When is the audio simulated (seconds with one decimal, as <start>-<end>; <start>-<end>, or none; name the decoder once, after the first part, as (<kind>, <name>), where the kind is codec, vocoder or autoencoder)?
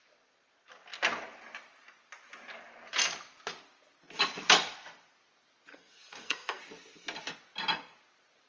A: 5.7-6.6 (codec, SNAC)